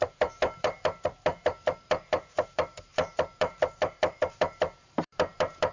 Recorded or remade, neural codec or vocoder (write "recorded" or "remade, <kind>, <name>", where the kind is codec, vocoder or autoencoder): remade, vocoder, BigVGAN v2